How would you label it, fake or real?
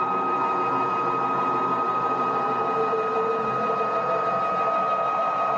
real